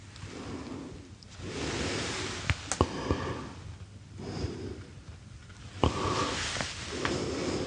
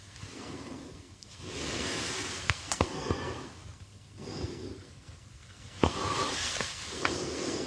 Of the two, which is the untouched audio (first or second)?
first